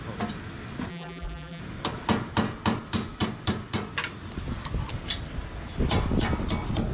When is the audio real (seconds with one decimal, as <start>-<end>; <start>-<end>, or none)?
0.0-0.9; 1.6-6.9